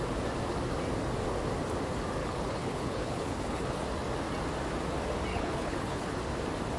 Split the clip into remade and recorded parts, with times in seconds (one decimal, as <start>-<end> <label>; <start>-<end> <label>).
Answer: 0.0-2.2 recorded; 2.2-3.8 remade; 3.8-5.3 recorded; 5.3-6.2 remade; 6.2-6.8 recorded